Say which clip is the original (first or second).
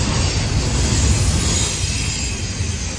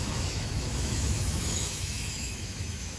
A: first